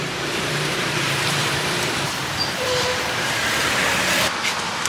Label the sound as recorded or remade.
remade